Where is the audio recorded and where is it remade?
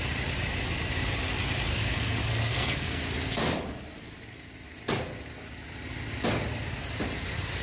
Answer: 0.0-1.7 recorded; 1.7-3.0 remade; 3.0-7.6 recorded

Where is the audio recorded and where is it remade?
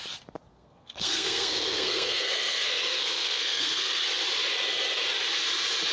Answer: 0.0-0.5 recorded; 0.5-4.0 remade; 4.0-5.9 recorded